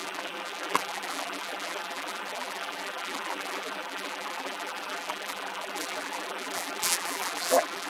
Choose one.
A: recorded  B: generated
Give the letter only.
B